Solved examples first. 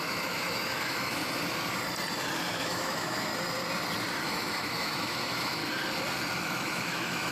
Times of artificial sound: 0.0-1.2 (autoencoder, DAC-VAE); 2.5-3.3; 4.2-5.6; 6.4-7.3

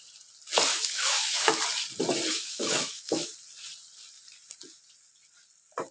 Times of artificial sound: 0.7-1.6 (autoencoder, DAC-VAE); 2.3-3.3

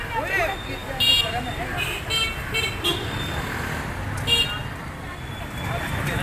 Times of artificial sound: none

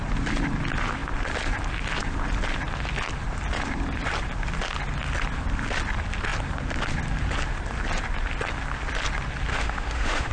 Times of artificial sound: 9.5-10.3 (autoencoder, DAC-VAE)

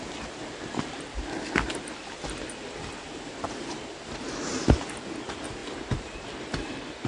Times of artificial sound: none

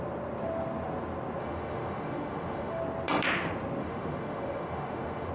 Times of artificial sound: 1.4-2.8 (autoencoder, DAC-VAE); 3.8-5.3

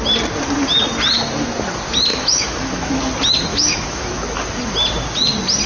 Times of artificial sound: 2.1-3.0 (autoencoder, DAC-VAE); 3.5-4.1

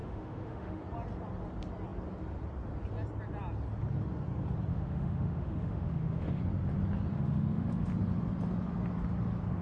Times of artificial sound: 0.0-0.8 (autoencoder, DAC-VAE); 4.7-6.4; 7.1-7.9